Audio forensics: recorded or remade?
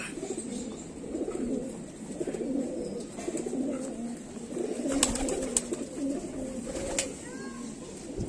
recorded